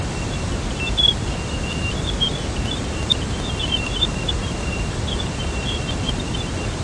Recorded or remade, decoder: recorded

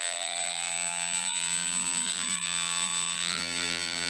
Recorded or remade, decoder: remade, vocoder, BigVGAN v2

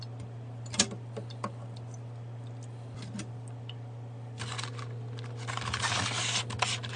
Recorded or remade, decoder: recorded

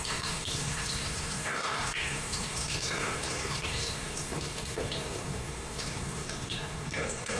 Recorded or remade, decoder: remade, codec, SNAC